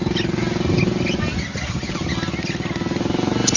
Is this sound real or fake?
real